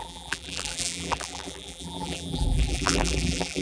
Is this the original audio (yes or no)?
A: no